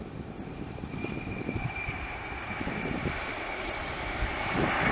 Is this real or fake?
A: fake